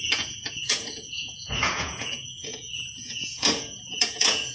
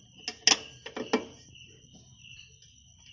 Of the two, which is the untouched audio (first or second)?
second